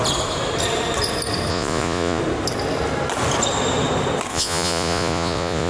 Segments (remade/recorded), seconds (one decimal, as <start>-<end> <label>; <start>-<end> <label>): 0.0-1.5 recorded; 1.5-2.2 remade; 2.2-4.3 recorded; 4.3-5.7 remade